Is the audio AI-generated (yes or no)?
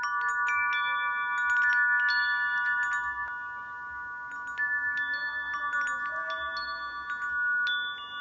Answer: no